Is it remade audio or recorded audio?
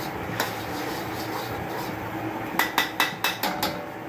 recorded